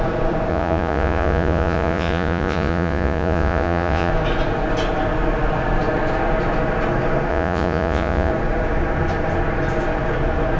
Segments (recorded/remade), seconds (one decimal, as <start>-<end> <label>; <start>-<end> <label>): 0.0-0.5 recorded; 0.5-4.1 remade; 4.1-7.3 recorded; 7.3-8.3 remade; 8.3-10.6 recorded